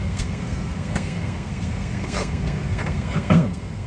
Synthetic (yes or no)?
yes